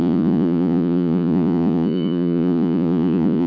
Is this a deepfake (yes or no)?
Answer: yes